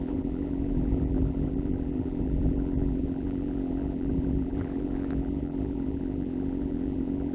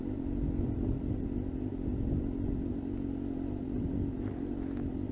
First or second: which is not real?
first